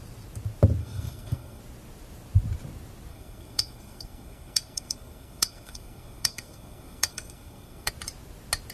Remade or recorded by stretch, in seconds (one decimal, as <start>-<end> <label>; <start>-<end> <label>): 0.0-0.8 recorded; 0.8-1.6 remade; 1.6-3.1 recorded; 3.1-7.9 remade; 7.9-8.7 recorded